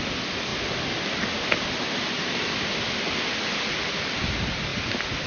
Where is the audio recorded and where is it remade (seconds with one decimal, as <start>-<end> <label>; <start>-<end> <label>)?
0.0-4.7 recorded; 4.7-5.3 remade